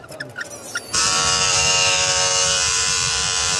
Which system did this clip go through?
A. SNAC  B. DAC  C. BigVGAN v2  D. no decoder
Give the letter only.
C